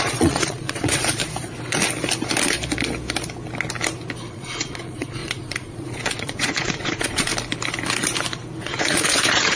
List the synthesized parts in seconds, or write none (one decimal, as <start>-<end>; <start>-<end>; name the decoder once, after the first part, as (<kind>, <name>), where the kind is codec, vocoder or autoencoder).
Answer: 0.0-1.2 (vocoder, Vocos); 4.3-7.3; 8.6-9.6